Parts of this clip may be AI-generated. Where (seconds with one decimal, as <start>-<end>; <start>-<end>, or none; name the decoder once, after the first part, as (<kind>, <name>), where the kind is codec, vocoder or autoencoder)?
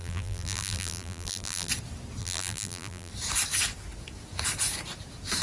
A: 0.0-1.7 (vocoder, BigVGAN v2); 2.2-3.1